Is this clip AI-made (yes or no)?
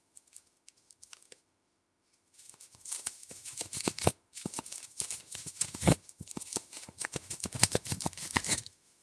yes